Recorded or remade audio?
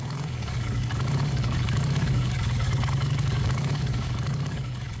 remade